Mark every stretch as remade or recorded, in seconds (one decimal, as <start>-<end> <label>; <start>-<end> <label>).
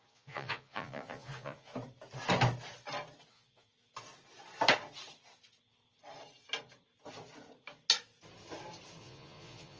0.0-1.7 remade; 1.7-3.3 recorded; 3.3-3.7 remade; 3.7-9.0 recorded; 9.0-9.8 remade